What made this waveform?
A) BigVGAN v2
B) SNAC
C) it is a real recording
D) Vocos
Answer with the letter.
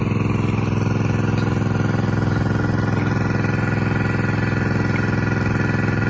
C